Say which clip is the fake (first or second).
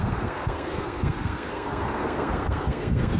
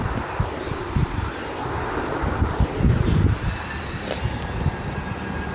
first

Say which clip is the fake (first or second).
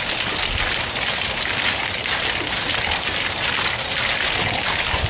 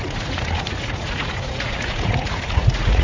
second